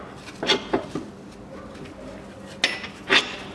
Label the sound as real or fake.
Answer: real